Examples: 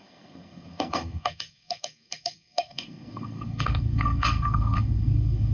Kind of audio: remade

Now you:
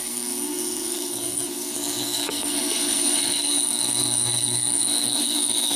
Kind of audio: remade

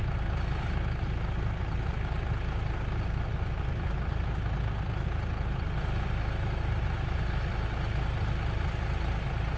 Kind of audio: recorded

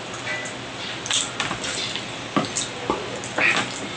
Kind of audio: recorded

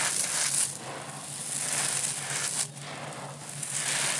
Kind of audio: recorded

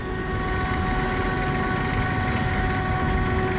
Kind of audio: recorded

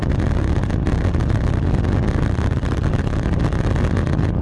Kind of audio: recorded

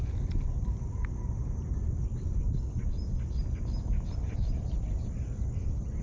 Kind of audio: recorded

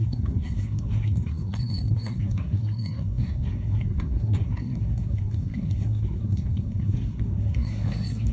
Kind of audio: remade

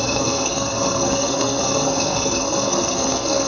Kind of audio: remade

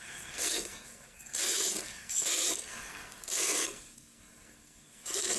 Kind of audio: remade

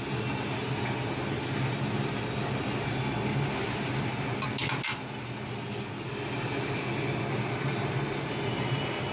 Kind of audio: recorded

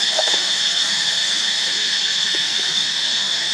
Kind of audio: remade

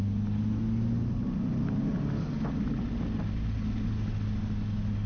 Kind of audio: recorded